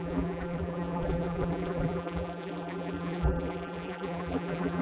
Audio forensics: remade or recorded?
remade